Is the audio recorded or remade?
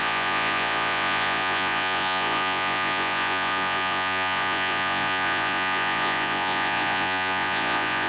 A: remade